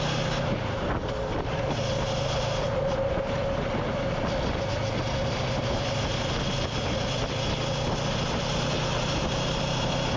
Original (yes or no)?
yes